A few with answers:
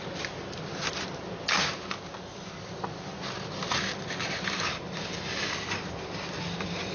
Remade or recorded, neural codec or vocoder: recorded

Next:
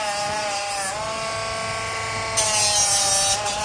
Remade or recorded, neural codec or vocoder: recorded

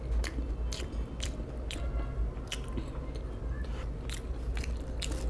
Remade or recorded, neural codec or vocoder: recorded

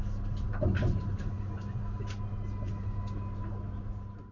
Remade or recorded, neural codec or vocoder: recorded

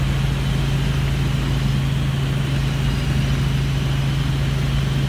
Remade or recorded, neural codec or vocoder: recorded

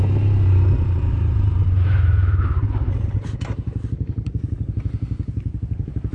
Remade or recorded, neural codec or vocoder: remade, vocoder, BigVGAN v2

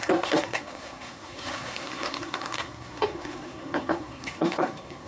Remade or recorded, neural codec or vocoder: remade, codec, SNAC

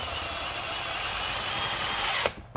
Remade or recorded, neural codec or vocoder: recorded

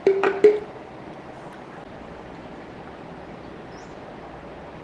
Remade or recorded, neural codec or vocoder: recorded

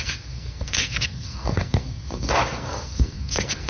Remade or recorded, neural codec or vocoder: remade, codec, SNAC